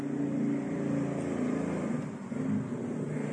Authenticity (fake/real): real